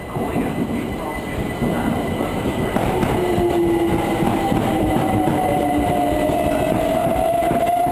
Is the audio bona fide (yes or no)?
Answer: no